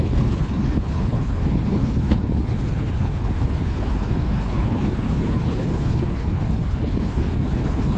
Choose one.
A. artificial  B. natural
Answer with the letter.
A